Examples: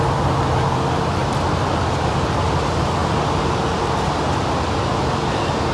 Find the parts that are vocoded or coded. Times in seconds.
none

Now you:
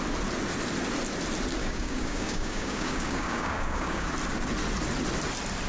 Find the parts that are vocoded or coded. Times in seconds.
1.6-4.1 (codec, DAC)

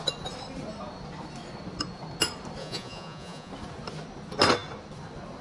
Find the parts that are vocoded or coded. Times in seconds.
2.6-3.5 (vocoder, Vocos)

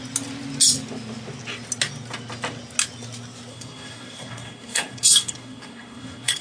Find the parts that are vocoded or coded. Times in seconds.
3.5-6.4 (codec, SNAC)

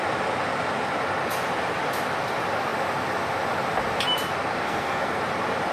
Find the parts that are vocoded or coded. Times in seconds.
4.5-5.2 (codec, SNAC)